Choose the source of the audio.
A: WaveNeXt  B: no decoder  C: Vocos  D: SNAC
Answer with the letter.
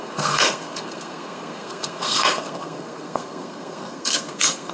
D